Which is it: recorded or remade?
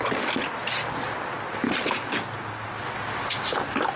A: recorded